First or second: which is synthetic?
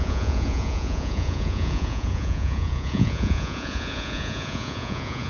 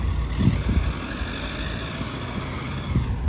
first